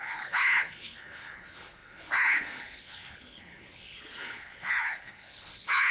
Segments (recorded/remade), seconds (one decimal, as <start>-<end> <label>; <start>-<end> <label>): 0.0-5.9 remade